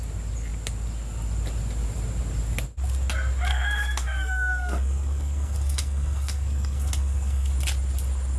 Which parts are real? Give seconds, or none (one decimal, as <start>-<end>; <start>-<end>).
0.0-3.5; 7.5-8.4